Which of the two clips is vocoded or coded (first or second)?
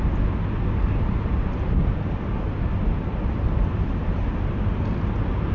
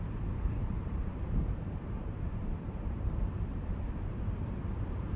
second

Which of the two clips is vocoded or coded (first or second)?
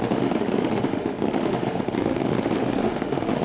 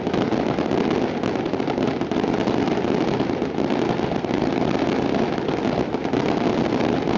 first